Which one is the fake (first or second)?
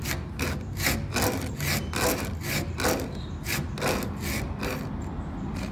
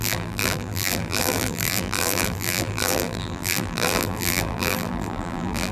second